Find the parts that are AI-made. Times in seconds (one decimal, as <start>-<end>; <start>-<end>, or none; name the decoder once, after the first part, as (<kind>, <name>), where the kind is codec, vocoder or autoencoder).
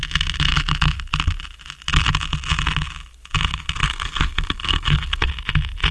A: 3.8-5.3 (codec, SNAC)